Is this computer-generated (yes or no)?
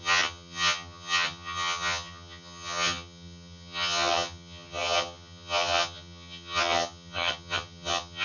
yes